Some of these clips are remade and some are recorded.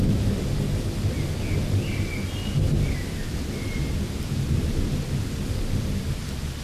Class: recorded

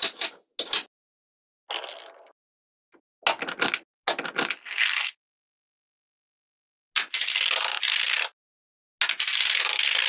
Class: recorded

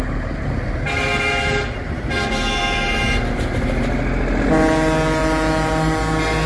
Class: recorded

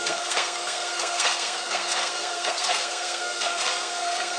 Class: remade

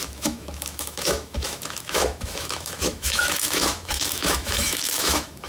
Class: remade